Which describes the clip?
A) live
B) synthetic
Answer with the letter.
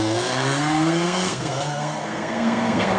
B